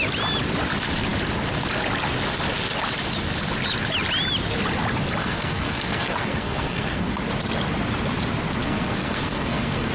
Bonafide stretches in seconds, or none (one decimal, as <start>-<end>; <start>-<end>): 0.0-5.2; 7.1-8.6